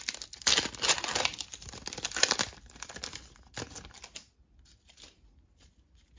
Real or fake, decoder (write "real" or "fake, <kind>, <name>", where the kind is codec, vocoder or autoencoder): real